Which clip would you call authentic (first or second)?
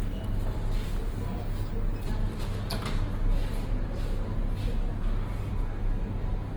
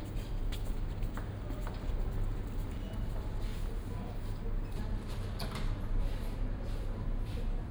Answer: first